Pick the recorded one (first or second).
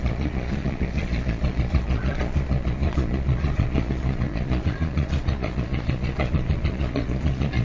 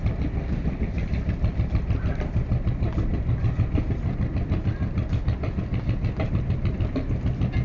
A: second